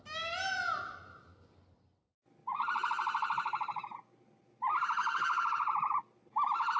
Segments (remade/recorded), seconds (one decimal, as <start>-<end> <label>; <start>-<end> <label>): 0.0-6.8 recorded